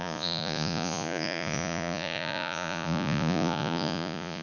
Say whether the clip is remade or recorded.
remade